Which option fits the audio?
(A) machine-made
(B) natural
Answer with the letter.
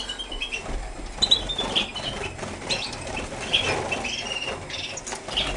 B